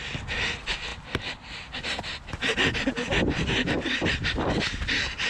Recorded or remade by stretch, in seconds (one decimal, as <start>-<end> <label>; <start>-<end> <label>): 0.0-5.3 recorded